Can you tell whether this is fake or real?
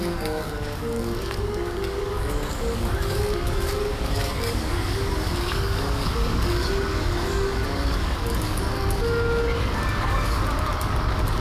fake